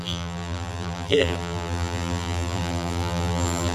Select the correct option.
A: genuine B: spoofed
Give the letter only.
B